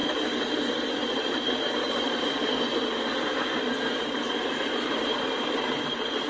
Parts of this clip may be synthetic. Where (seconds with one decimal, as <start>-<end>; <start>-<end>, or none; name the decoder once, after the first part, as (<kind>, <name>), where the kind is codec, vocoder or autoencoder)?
0.0-2.4 (vocoder, BigVGAN v2); 4.0-6.3